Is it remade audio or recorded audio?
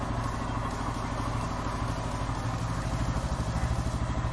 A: recorded